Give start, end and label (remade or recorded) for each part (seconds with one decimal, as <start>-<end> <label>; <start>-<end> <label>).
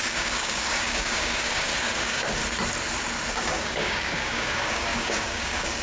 0.0-2.4 remade; 2.4-3.3 recorded; 3.3-5.8 remade